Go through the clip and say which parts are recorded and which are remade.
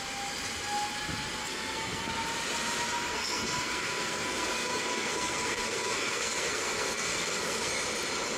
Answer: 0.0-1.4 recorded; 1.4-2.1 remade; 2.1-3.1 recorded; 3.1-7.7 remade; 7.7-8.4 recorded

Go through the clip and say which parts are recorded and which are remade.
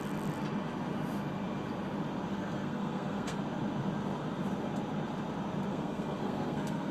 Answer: 0.0-2.3 recorded; 2.3-3.4 remade; 3.4-5.7 recorded; 5.7-6.9 remade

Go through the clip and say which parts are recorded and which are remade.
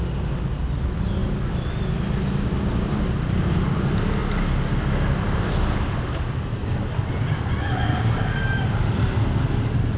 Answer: 0.0-10.0 recorded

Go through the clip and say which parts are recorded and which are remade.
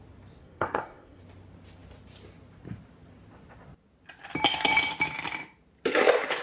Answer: 0.0-0.4 recorded; 0.4-1.2 remade; 1.2-6.4 recorded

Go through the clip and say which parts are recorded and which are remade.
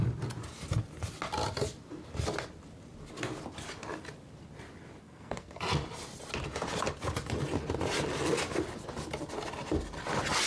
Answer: 0.0-5.0 recorded; 5.0-5.6 remade; 5.6-10.5 recorded